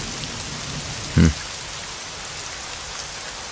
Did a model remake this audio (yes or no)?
no